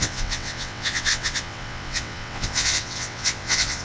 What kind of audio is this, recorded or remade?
remade